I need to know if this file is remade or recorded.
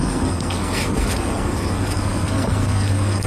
remade